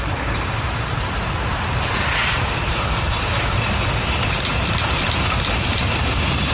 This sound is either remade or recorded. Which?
recorded